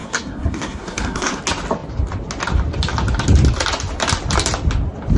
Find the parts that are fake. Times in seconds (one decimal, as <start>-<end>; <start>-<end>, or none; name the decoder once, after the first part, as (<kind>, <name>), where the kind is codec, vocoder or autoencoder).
0.0-1.4 (codec, SNAC)